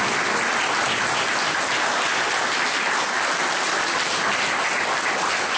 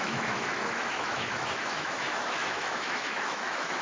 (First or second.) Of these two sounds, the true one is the first